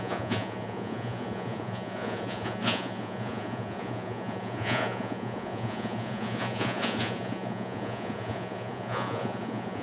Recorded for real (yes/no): no